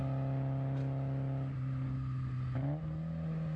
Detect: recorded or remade recorded